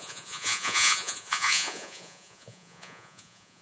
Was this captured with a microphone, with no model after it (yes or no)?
no